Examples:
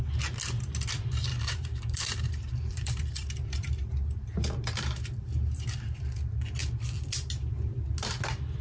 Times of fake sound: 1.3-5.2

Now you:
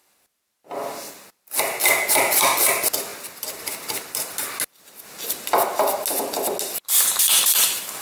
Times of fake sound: none